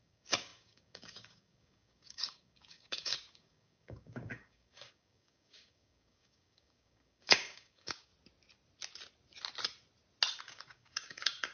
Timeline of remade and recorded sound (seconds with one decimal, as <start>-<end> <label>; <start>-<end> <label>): 0.0-8.1 remade; 8.1-10.4 recorded; 10.4-11.5 remade